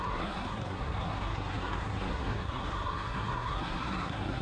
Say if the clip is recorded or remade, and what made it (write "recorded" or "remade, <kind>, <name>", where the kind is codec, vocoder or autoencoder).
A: remade, codec, SNAC